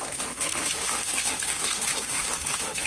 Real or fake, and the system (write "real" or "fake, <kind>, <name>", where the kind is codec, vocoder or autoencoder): fake, autoencoder, DAC-VAE